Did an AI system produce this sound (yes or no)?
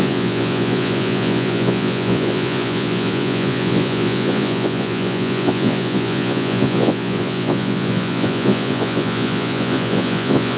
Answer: yes